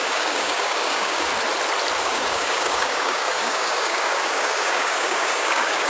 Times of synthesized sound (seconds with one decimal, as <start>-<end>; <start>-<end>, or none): 0.0-1.3; 2.0-5.9